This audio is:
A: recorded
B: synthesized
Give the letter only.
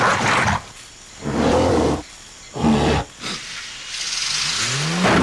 A